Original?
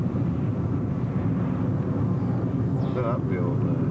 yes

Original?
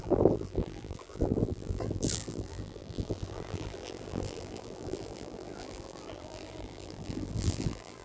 no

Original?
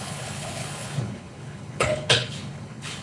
no